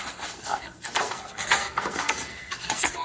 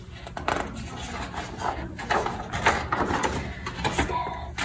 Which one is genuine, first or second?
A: second